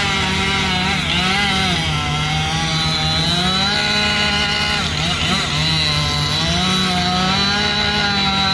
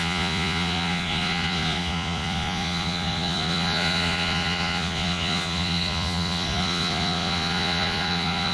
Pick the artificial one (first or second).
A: second